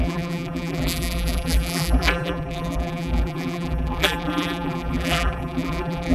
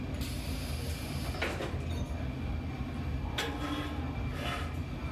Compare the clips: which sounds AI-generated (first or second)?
first